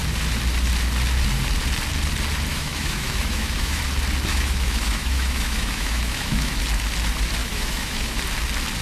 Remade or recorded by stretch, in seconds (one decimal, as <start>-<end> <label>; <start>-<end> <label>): 0.0-2.5 recorded; 2.5-3.8 remade; 3.8-4.3 recorded; 4.3-6.6 remade; 6.6-7.4 recorded; 7.4-8.2 remade; 8.2-8.8 recorded